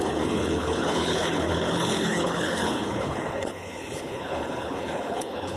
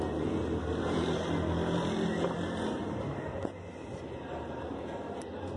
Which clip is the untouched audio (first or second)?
second